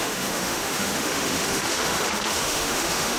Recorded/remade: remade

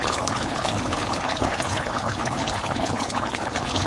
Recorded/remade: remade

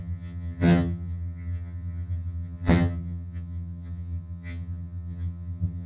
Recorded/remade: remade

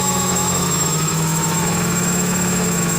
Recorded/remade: remade